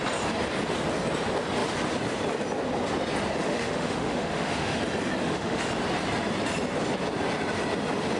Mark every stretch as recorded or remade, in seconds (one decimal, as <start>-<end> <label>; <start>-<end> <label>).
0.0-3.4 recorded; 3.4-4.8 remade; 4.8-5.2 recorded; 5.2-5.7 remade; 5.7-8.2 recorded